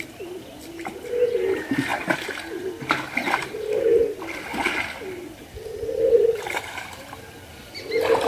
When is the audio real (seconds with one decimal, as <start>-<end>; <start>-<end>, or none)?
0.0-8.3